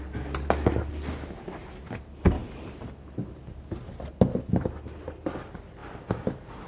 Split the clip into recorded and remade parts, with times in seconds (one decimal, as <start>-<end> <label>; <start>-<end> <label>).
0.0-6.7 recorded